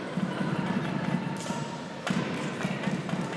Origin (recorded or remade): recorded